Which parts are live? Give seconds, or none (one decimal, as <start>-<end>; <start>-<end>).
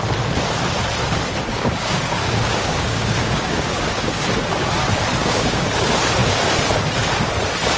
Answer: 0.0-1.5; 4.2-5.2; 5.7-7.8